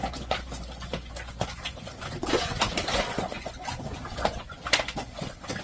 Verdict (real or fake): fake